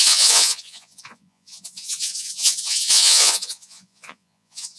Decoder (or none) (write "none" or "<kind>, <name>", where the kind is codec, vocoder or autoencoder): vocoder, Vocos